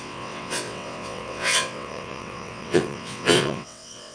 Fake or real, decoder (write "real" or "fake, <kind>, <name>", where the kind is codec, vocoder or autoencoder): fake, vocoder, WaveNeXt